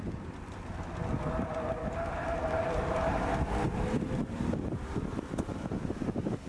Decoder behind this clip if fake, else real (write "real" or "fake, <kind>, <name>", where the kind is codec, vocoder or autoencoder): fake, vocoder, BigVGAN v2